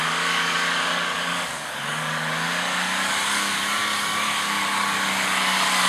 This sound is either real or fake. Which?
fake